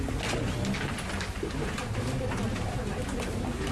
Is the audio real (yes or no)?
yes